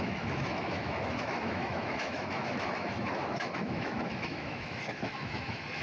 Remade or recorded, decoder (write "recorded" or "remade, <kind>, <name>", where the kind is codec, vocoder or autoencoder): remade, autoencoder, DAC-VAE